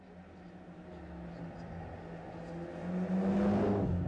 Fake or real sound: real